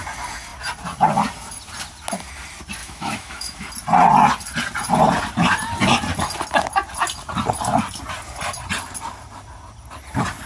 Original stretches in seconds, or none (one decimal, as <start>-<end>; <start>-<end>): 0.0-2.8; 3.7-10.5